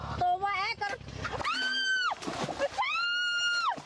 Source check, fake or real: real